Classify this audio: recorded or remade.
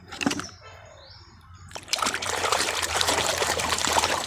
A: remade